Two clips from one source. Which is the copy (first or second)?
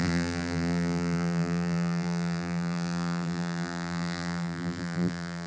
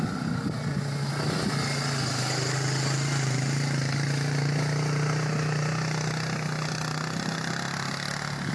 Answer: first